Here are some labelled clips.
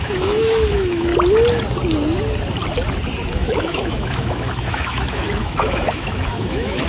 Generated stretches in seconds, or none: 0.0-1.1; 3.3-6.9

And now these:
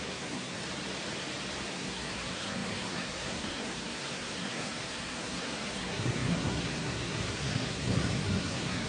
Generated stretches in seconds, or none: 0.0-0.6; 1.7-8.9

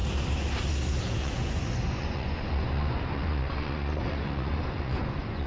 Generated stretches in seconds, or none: 1.2-5.5